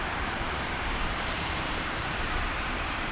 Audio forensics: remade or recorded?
remade